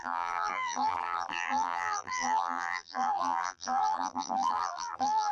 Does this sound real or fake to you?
fake